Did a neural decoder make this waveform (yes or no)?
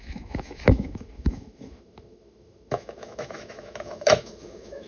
yes